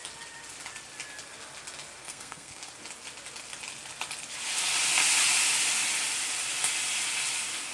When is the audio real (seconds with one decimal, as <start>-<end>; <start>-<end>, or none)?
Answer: 0.0-2.0; 2.7-7.7